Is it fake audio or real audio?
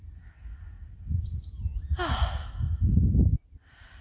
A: real